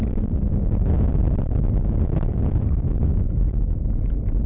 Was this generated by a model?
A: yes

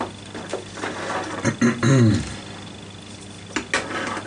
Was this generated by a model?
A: no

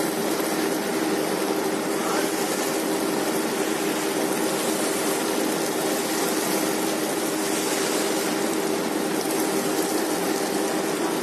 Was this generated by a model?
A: no